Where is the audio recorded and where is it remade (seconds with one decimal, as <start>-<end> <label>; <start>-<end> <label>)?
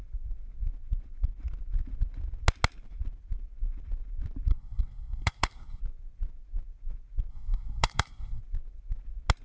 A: 0.0-4.5 recorded; 4.5-5.8 remade; 5.8-7.3 recorded; 7.3-8.4 remade; 8.4-9.4 recorded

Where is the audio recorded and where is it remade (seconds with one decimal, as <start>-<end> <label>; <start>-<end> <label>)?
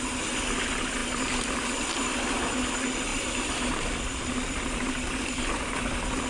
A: 0.0-6.3 recorded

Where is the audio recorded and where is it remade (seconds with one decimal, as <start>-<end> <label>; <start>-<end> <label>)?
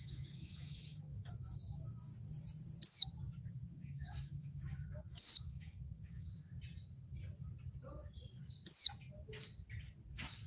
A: 0.0-2.1 remade; 2.1-3.5 recorded; 3.5-6.4 remade; 6.4-10.5 recorded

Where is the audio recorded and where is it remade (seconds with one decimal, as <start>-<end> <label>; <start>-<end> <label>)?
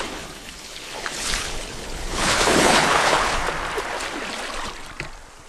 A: 0.0-3.4 remade; 3.4-5.5 recorded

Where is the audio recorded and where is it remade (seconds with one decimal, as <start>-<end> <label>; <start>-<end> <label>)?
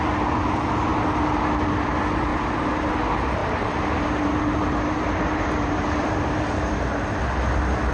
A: 0.0-2.3 recorded; 2.3-2.9 remade; 2.9-3.4 recorded; 3.4-7.2 remade; 7.2-7.9 recorded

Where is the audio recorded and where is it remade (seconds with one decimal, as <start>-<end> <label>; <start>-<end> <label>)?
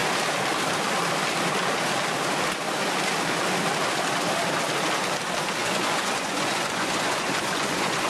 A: 0.0-5.6 recorded; 5.6-8.1 remade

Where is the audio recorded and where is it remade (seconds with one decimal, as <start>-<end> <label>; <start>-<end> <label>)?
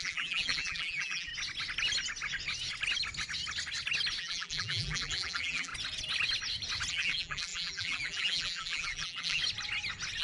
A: 0.0-1.3 remade; 1.3-4.2 recorded; 4.2-5.7 remade; 5.7-6.9 recorded; 6.9-9.4 remade; 9.4-10.2 recorded